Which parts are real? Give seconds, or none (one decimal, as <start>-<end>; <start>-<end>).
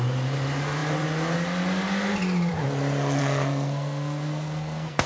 0.0-3.2